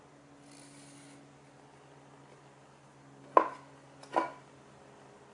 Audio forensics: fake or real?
real